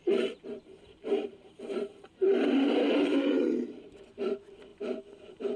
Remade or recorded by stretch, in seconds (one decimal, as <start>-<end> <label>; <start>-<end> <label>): 0.0-3.4 remade; 3.4-5.6 recorded